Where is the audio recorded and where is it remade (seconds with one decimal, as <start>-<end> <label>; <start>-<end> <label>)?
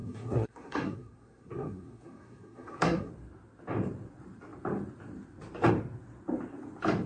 0.0-3.1 remade; 3.1-7.1 recorded